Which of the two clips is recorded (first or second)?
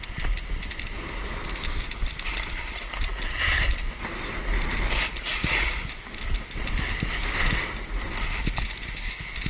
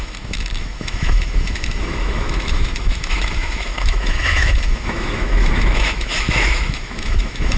first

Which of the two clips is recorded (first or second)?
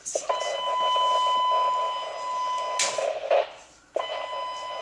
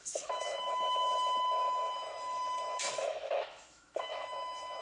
first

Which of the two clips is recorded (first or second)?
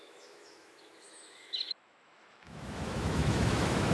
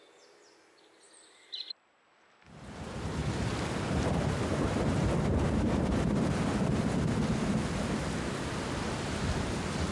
second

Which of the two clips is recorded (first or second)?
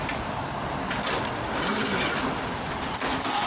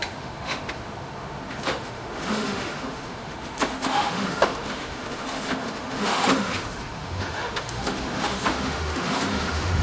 first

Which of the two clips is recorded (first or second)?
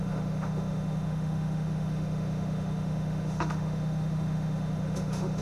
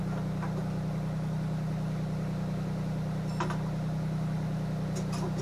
second